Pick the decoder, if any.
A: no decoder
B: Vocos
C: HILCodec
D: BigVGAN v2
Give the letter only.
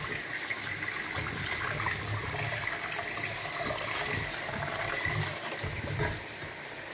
A